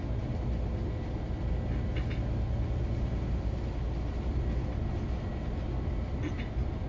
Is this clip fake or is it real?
real